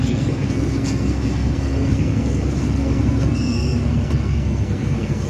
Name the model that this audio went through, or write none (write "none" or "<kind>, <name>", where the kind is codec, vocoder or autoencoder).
codec, SNAC